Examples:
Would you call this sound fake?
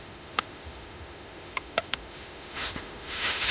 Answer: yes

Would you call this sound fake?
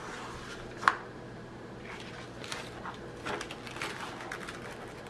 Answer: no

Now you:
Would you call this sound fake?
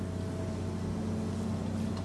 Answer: no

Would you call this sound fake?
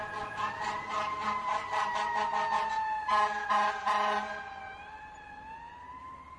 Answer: no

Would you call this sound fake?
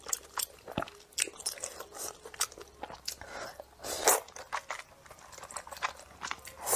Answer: no